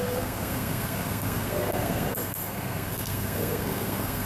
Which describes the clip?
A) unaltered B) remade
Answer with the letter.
B